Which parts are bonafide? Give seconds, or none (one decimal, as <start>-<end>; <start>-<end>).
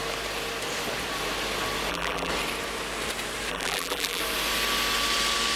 0.0-1.9; 2.3-3.5; 4.2-5.6